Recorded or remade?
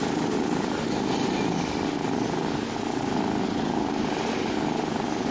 recorded